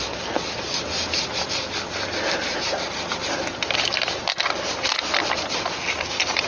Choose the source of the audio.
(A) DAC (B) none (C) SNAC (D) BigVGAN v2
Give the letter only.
B